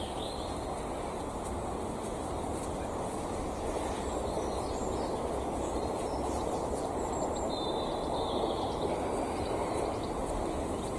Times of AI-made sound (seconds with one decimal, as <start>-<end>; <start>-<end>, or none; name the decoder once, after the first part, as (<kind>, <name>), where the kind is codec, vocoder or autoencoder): none